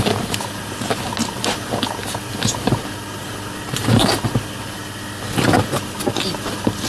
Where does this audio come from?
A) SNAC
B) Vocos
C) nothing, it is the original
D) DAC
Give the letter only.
C